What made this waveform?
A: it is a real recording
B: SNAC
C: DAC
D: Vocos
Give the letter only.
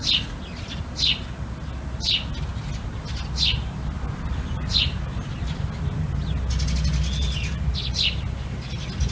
A